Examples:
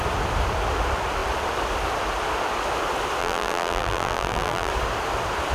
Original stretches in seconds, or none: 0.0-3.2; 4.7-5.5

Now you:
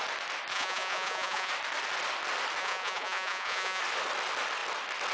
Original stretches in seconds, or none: 0.0-0.5; 1.5-2.6; 3.8-5.1

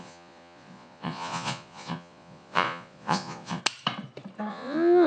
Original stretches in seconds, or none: 3.6-4.5

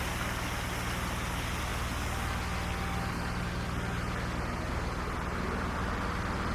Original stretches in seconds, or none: 0.0-6.5